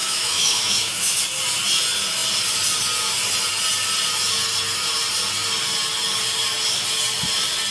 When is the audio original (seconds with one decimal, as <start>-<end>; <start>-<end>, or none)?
1.2-7.7